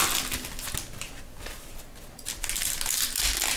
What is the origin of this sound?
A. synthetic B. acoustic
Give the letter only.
B